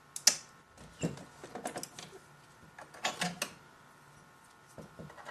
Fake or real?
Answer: real